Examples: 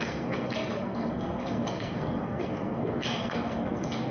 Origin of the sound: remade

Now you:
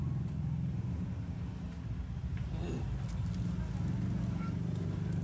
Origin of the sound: recorded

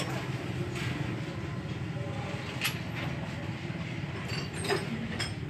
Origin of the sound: recorded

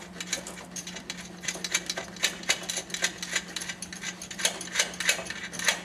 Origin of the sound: recorded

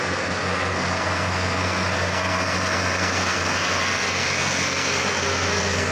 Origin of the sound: remade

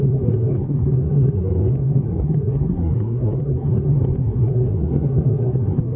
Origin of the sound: remade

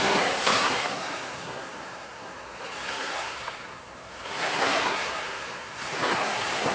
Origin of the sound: remade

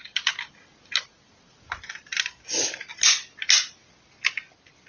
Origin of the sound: recorded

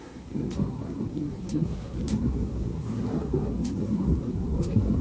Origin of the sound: remade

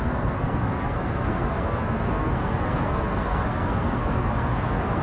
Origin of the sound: remade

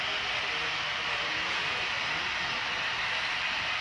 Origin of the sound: recorded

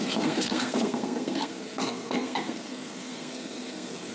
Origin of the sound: remade